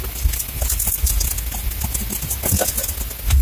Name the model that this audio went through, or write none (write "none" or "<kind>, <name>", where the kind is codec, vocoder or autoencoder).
none